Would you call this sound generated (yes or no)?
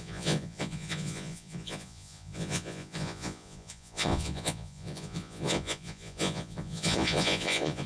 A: yes